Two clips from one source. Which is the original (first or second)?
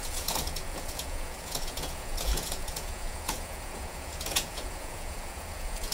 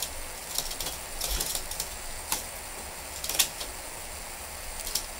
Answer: second